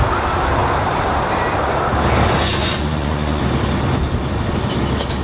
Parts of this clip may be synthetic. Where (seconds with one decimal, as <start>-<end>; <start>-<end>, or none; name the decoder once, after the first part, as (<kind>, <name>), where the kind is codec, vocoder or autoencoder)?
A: 2.4-3.4 (vocoder, Vocos)